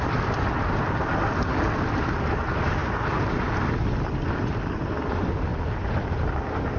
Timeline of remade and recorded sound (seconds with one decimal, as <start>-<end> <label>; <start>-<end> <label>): 0.0-6.8 recorded